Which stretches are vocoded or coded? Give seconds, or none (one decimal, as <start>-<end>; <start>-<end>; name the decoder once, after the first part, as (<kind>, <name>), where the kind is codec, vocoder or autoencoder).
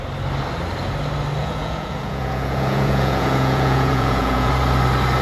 1.4-4.5 (vocoder, Vocos)